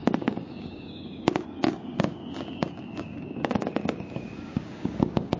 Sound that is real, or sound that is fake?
fake